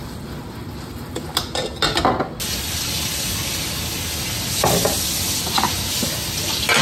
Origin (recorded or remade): recorded